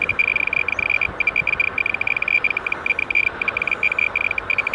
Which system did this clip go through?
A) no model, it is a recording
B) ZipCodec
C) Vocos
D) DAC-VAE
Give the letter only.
A